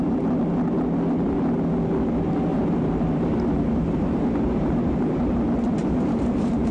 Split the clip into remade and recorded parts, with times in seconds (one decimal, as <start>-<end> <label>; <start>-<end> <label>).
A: 0.0-2.5 recorded; 2.5-5.2 remade; 5.2-5.8 recorded; 5.8-6.7 remade